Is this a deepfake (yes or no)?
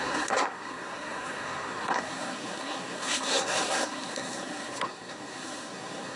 yes